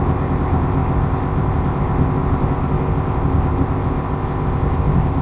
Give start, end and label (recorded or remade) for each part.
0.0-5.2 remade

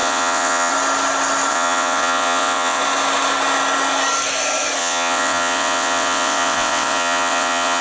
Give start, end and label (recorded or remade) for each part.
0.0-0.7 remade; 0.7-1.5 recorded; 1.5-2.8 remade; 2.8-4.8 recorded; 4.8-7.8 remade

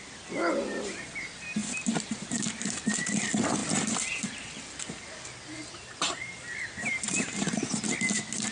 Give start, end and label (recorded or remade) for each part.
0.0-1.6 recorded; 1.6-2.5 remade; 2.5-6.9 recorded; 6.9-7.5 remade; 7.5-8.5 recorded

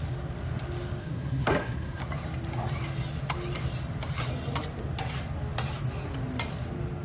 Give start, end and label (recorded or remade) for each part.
0.0-1.0 recorded; 1.0-2.0 remade; 2.0-7.0 recorded